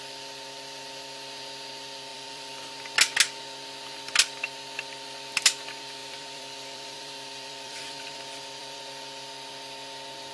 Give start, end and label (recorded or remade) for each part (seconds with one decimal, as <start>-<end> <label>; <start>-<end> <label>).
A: 0.0-2.1 recorded; 2.1-2.6 remade; 2.6-6.0 recorded; 6.0-8.8 remade; 8.8-10.3 recorded